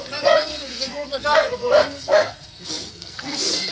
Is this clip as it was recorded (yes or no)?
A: no